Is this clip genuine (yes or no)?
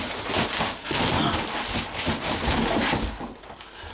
yes